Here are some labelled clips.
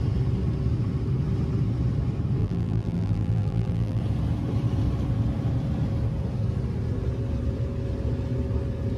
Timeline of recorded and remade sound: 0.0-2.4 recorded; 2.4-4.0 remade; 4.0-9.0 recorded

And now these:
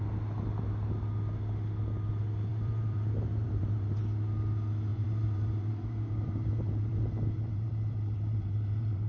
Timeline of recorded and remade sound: 0.0-2.5 recorded; 2.5-4.0 remade; 4.0-4.9 recorded; 4.9-9.1 remade

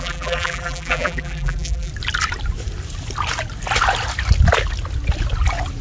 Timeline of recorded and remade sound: 0.0-1.9 remade; 1.9-5.8 recorded

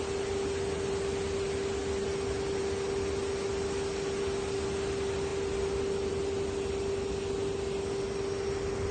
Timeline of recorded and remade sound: 0.0-8.9 recorded

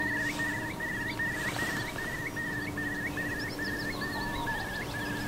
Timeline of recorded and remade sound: 0.0-5.3 recorded

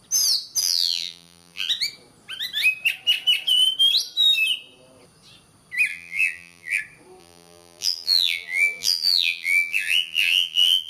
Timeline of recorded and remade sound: 0.0-0.6 recorded; 0.6-1.7 remade; 1.7-5.9 recorded; 5.9-6.8 remade; 6.8-7.2 recorded; 7.2-10.9 remade

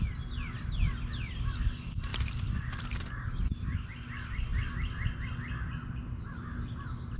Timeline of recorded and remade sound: 0.0-2.1 recorded; 2.1-3.9 remade; 3.9-7.2 recorded